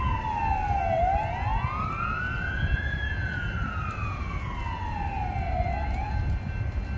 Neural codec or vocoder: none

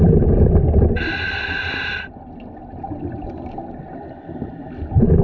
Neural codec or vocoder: none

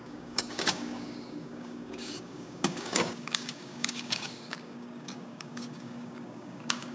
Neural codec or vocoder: codec, DAC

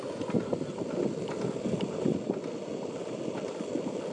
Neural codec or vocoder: none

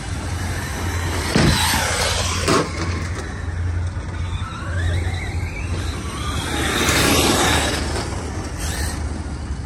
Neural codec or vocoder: none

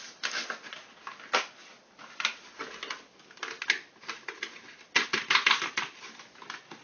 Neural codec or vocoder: none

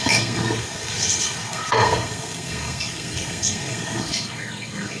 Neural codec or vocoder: codec, SNAC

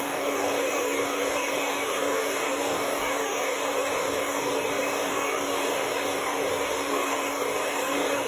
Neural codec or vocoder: codec, DAC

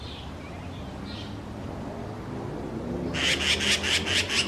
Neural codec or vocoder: none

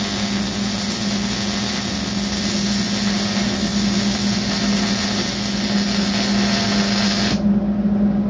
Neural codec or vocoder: none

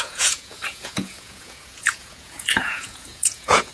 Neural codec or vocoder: vocoder, Vocos